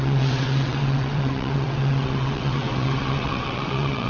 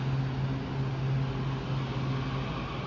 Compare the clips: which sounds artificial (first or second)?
first